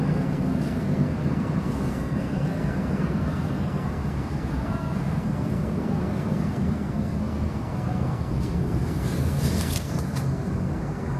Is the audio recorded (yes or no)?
no